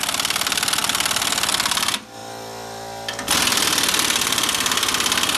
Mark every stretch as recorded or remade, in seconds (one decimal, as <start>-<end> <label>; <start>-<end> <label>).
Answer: 0.0-5.4 recorded